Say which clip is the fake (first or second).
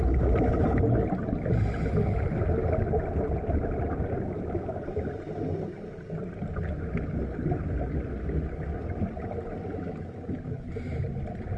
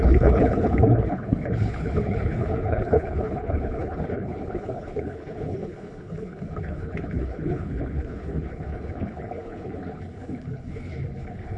second